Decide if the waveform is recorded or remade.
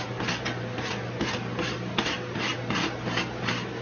recorded